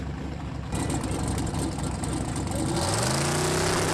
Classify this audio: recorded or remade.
recorded